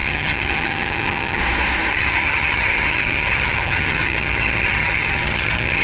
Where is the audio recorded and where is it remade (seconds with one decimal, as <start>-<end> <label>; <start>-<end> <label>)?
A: 0.0-1.4 remade; 1.4-1.9 recorded; 1.9-5.8 remade